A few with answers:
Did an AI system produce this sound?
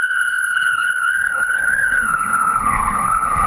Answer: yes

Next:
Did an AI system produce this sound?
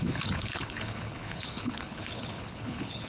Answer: yes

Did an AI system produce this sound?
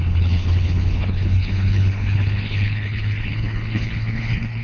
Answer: yes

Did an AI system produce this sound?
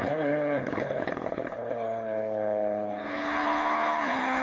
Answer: yes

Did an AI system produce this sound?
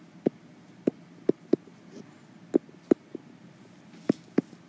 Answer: no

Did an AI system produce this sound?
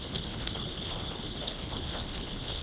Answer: yes